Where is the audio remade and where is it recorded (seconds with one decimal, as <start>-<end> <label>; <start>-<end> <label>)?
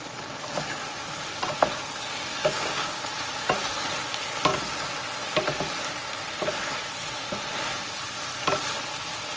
0.0-2.4 recorded; 2.4-3.0 remade; 3.0-9.4 recorded